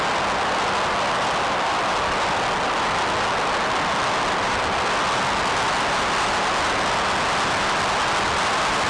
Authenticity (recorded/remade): recorded